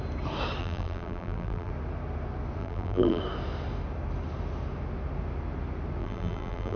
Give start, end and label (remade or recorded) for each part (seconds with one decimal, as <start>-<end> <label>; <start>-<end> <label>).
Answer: 0.0-0.6 recorded; 0.6-1.7 remade; 1.7-2.6 recorded; 2.6-3.2 remade; 3.2-6.0 recorded; 6.0-6.8 remade